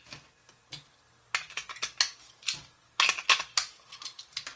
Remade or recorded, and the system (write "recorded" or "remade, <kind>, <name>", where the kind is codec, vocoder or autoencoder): recorded